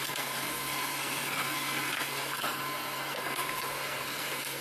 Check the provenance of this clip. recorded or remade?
remade